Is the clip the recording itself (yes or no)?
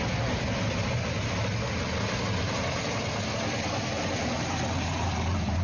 yes